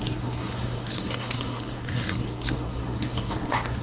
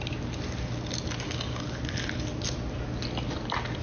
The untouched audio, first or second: second